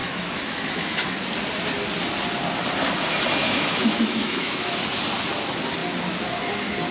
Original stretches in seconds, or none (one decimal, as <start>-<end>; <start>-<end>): 1.2-3.4; 4.7-6.9